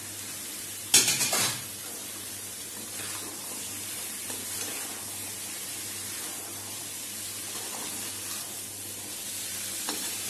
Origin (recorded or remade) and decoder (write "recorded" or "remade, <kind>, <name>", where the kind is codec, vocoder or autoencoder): recorded